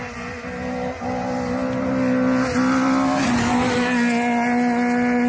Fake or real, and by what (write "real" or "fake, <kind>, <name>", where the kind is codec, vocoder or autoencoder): real